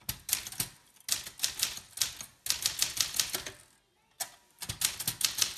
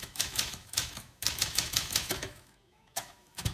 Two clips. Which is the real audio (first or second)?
first